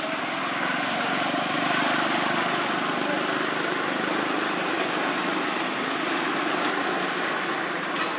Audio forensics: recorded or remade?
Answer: recorded